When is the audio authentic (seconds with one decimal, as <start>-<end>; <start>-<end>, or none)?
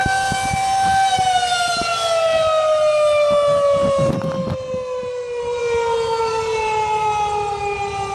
1.9-5.0